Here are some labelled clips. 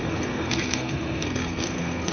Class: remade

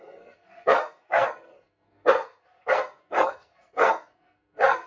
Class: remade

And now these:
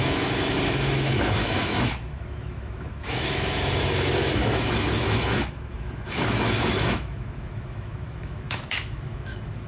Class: remade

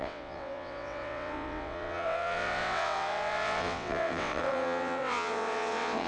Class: remade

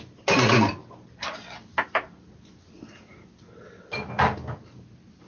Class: recorded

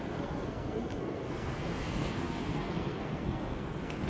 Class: remade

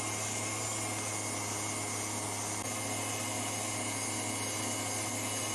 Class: recorded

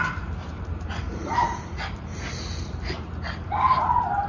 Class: recorded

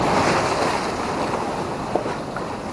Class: recorded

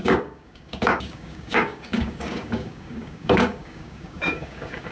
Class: remade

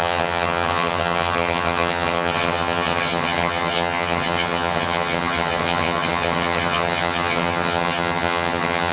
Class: remade